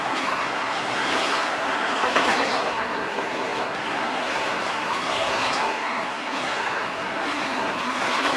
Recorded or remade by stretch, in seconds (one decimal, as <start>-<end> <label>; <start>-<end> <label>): 0.0-8.4 remade

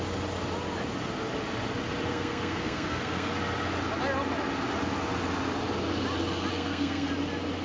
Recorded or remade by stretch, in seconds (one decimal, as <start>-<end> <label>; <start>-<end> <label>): 0.0-2.1 recorded; 2.1-3.3 remade; 3.3-6.5 recorded; 6.5-7.1 remade; 7.1-7.6 recorded

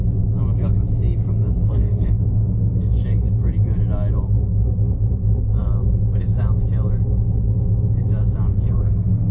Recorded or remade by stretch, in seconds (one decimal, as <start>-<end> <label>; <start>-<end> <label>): 0.0-1.6 recorded; 1.6-2.9 remade; 2.9-8.5 recorded; 8.5-9.3 remade

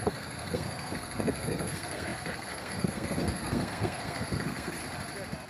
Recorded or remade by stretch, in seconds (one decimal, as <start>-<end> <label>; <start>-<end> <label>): 0.0-4.8 remade; 4.8-5.5 recorded

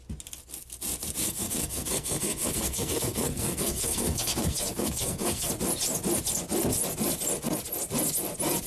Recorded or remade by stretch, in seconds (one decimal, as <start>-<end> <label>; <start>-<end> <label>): 0.0-1.2 recorded; 1.2-5.5 remade; 5.5-8.7 recorded

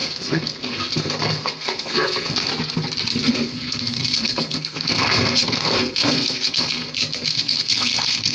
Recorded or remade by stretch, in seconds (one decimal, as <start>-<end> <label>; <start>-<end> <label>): 0.0-2.5 remade; 2.5-3.3 recorded; 3.3-8.3 remade